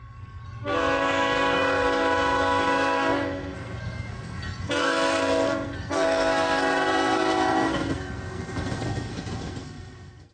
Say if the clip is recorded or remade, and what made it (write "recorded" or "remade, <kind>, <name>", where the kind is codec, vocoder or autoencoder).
remade, codec, SNAC